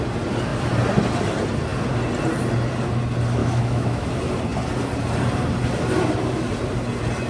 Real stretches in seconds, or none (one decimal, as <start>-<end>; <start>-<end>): 0.0-3.4; 4.1-7.3